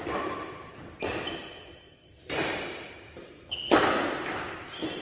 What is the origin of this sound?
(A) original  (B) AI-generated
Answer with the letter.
A